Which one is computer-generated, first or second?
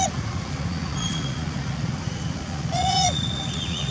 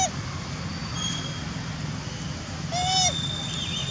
first